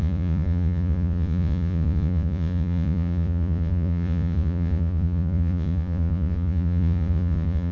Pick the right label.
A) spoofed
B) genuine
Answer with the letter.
A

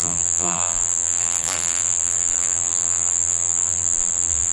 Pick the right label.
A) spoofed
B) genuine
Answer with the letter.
A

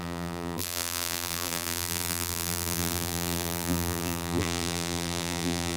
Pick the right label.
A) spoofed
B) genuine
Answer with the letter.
A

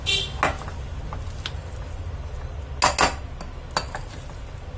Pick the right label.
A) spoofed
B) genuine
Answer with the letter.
B